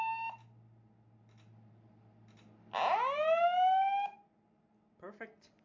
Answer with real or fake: real